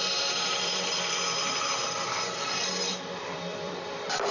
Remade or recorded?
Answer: remade